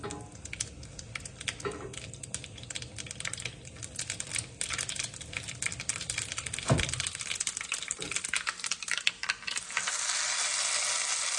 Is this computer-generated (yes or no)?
no